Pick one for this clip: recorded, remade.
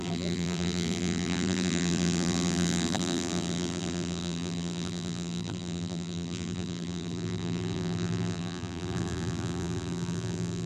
remade